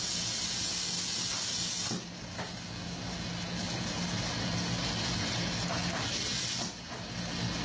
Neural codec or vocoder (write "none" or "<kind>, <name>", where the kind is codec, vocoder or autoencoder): none